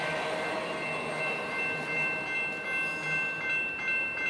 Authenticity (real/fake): real